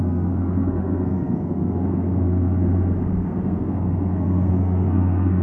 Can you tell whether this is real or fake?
fake